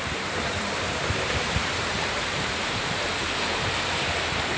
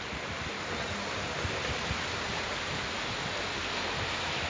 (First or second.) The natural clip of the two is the second